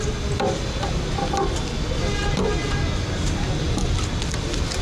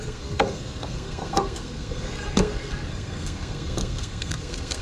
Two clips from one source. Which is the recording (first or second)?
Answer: first